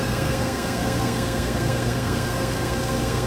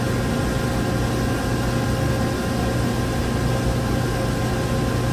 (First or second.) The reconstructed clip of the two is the first